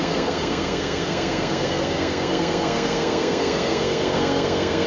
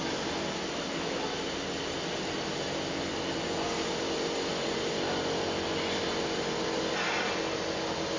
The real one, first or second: second